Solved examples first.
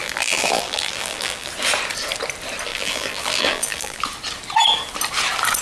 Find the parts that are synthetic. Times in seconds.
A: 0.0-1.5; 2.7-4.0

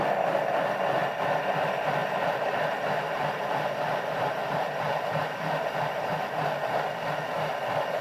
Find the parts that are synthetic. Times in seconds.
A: 2.0-5.8

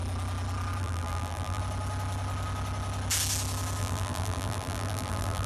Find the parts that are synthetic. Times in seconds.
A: 0.8-1.6; 3.8-5.5